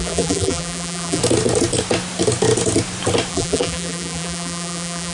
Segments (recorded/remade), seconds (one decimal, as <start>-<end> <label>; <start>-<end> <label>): 0.0-1.2 remade; 1.2-3.3 recorded; 3.3-5.1 remade